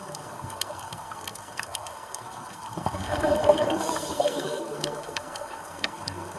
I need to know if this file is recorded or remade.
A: remade